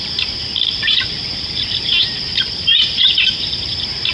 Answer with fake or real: fake